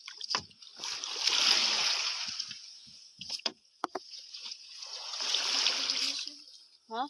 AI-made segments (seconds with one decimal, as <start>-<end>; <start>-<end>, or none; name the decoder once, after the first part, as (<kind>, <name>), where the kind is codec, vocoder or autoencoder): 1.7-5.4 (vocoder, Vocos)